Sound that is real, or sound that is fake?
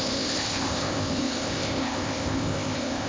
fake